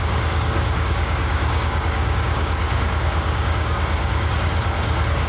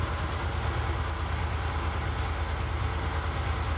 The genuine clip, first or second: second